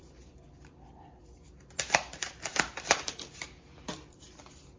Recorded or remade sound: remade